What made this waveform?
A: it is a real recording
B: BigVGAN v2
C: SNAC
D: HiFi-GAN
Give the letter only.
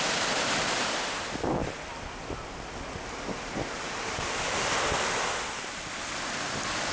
A